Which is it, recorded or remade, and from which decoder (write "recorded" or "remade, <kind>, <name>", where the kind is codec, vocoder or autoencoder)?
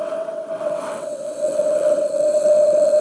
remade, vocoder, WaveNeXt